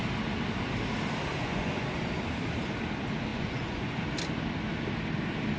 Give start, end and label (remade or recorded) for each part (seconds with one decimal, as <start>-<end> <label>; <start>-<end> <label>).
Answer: 0.0-1.3 recorded; 1.3-2.0 remade; 2.0-3.3 recorded; 3.3-4.0 remade; 4.0-5.6 recorded